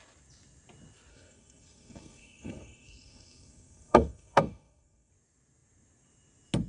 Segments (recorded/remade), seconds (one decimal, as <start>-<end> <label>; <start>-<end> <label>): 0.0-1.1 recorded; 1.1-5.1 remade; 5.1-6.7 recorded